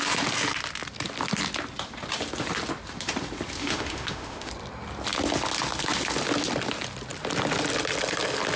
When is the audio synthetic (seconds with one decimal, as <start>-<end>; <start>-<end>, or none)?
3.6-4.5